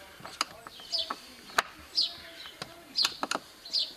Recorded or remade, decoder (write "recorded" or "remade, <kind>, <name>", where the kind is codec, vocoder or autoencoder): recorded